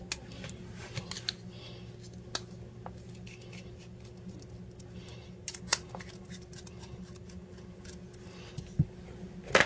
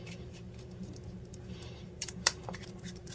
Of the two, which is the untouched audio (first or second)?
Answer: first